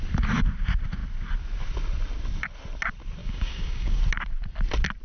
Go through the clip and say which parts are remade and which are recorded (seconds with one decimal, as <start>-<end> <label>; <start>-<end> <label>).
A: 0.0-3.2 recorded; 3.2-4.0 remade; 4.0-5.0 recorded